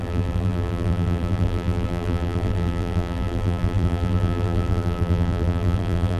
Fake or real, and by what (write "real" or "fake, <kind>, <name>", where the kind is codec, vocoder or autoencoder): fake, vocoder, BigVGAN v2